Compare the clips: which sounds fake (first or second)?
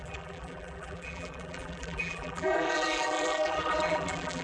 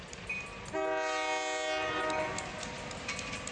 first